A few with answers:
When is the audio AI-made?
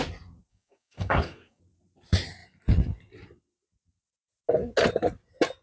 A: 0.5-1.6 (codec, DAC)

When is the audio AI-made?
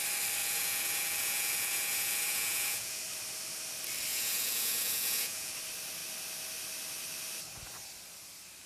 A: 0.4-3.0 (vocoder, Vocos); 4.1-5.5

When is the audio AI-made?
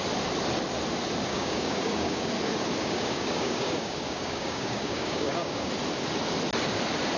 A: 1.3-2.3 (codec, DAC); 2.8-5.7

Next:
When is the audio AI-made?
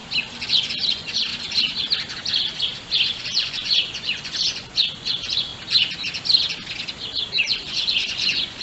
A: 0.6-1.3 (vocoder, Vocos); 3.2-5.5; 7.4-8.6